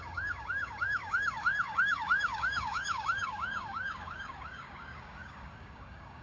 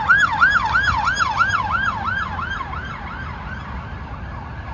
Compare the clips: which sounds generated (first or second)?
first